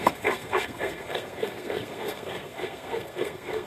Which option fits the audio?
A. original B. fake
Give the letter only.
B